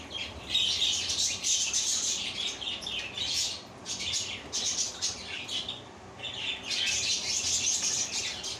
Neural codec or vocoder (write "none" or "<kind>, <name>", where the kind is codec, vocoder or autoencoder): none